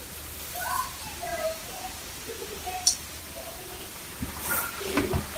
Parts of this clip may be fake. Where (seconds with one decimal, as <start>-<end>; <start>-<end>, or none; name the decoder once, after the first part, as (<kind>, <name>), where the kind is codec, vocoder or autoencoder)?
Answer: 1.3-4.4 (vocoder, BigVGAN v2)